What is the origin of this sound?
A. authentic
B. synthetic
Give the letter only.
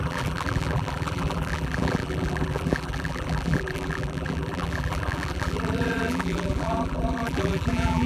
B